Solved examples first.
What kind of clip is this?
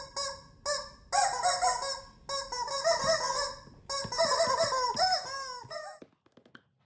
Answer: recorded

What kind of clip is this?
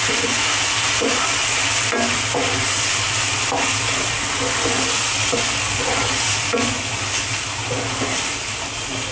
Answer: recorded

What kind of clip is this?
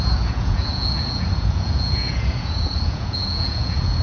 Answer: remade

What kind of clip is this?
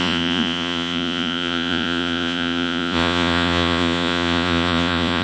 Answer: remade